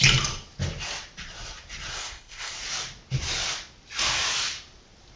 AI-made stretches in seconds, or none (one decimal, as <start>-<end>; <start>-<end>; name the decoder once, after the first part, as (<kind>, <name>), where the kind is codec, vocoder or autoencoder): 1.9-2.5 (codec, ZipCodec)

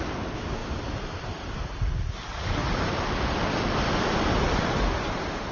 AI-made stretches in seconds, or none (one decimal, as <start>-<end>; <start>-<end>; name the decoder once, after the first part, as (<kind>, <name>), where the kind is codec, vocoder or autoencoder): none

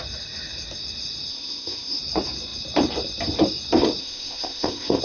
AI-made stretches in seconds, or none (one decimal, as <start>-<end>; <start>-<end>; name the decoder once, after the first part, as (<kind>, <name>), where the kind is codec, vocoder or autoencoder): 1.3-2.0 (codec, ZipCodec); 4.0-5.0

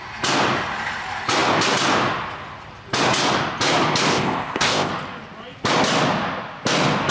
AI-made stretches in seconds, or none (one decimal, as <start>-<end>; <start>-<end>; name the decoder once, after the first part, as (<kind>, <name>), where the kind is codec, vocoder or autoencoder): 4.1-4.9 (codec, ZipCodec)

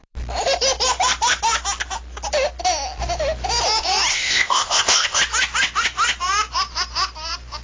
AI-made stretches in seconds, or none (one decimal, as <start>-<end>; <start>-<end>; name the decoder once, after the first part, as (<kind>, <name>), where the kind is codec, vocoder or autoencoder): 4.1-5.2 (codec, ZipCodec)